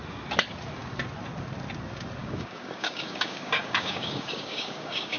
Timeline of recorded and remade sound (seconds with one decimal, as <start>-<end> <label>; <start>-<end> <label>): 0.0-2.2 recorded; 2.2-5.2 remade